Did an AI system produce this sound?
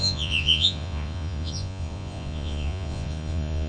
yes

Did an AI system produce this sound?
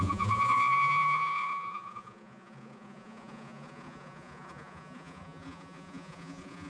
yes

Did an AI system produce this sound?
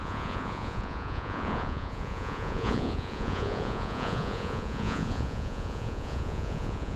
yes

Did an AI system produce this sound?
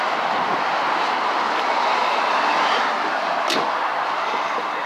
no